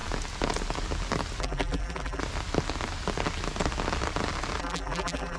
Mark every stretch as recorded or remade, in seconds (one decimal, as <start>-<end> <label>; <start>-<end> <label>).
0.0-1.4 recorded; 1.4-2.2 remade; 2.2-4.6 recorded; 4.6-5.4 remade